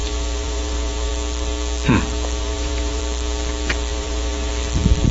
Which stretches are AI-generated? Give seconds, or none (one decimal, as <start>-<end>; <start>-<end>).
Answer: 0.0-1.1; 2.4-3.0; 3.9-4.5